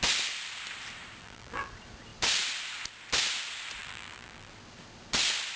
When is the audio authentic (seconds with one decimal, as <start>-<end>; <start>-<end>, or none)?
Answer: 0.0-1.2; 1.7-3.8; 4.5-5.6